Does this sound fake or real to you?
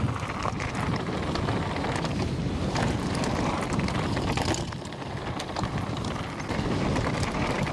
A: fake